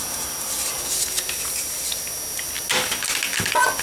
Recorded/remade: recorded